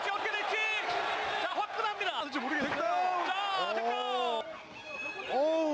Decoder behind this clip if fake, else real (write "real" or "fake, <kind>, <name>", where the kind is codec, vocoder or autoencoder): real